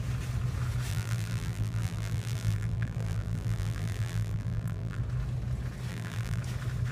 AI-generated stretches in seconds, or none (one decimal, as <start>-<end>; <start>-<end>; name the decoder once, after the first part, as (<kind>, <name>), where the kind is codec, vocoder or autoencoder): 0.9-5.0 (vocoder, BigVGAN v2); 5.9-6.4